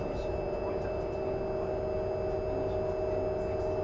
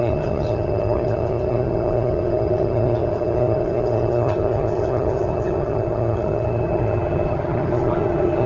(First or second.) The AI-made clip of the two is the second